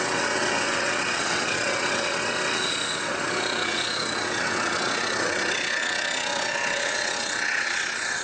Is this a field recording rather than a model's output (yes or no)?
no